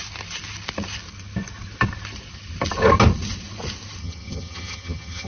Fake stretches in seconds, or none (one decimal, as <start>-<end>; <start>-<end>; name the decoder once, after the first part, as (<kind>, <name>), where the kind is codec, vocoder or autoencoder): 4.0-5.3 (vocoder, HiFi-GAN)